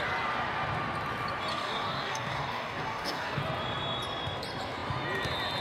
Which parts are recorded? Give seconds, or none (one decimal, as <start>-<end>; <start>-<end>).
0.0-1.5; 3.4-5.6